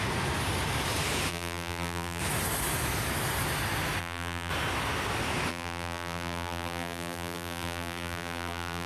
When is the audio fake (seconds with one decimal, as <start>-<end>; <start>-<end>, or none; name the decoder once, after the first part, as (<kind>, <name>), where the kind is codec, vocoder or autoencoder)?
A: 1.3-2.2 (vocoder, BigVGAN v2); 4.0-4.5; 5.5-8.9